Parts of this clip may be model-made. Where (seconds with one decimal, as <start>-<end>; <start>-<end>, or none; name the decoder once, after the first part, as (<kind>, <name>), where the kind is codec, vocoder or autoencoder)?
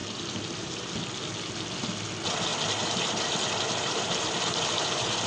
0.0-1.5 (vocoder, BigVGAN v2); 2.5-4.6